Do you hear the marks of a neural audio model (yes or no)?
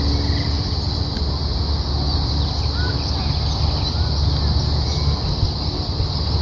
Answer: no